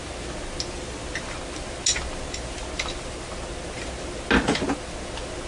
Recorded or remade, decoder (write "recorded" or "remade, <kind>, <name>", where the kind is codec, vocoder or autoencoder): recorded